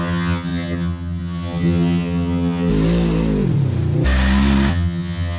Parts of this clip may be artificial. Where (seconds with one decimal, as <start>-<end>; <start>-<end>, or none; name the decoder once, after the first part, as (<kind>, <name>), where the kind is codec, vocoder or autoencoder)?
0.0-2.7 (vocoder, HiFi-GAN); 4.7-5.4